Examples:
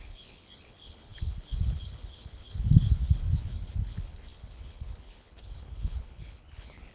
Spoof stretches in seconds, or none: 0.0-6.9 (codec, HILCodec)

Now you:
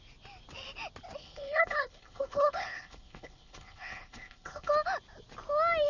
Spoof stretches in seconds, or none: 1.2-4.7 (codec, HILCodec)